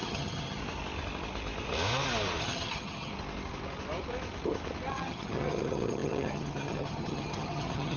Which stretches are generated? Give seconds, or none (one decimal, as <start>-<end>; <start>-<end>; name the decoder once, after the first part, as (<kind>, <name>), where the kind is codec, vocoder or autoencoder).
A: 0.0-0.6 (vocoder, HiFi-GAN); 2.4-3.1; 4.9-8.0